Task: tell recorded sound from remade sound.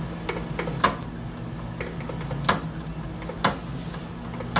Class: recorded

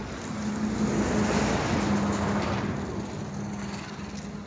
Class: recorded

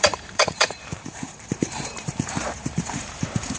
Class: remade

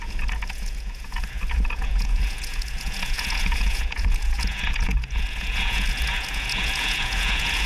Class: remade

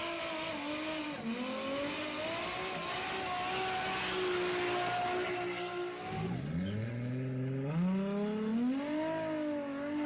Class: recorded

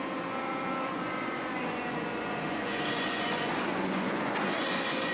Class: remade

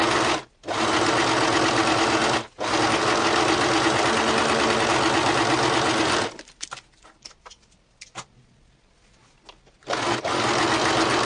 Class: recorded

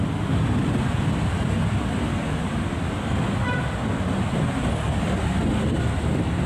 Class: recorded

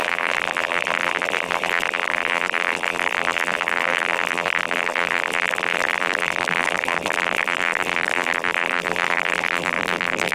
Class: remade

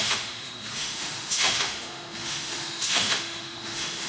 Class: remade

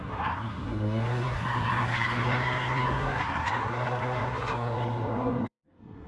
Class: remade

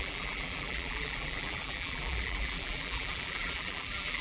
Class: remade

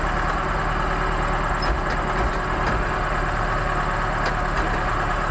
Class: recorded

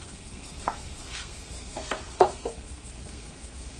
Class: remade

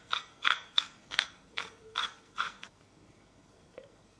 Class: remade